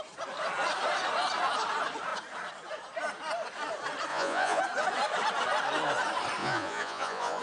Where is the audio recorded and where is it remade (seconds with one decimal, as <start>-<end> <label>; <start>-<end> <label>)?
0.0-4.1 recorded; 4.1-4.6 remade; 4.6-6.4 recorded; 6.4-7.4 remade